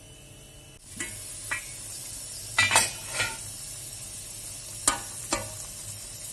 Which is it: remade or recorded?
recorded